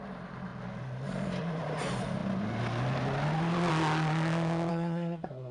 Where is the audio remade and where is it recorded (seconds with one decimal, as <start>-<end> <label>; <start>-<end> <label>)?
0.0-4.7 recorded; 4.7-5.5 remade